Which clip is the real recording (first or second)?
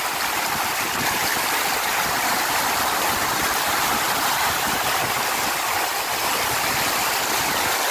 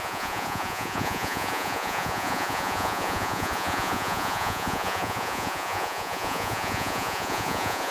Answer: first